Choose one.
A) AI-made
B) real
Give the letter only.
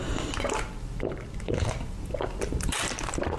B